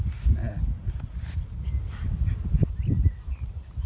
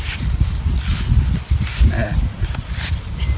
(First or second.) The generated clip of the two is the second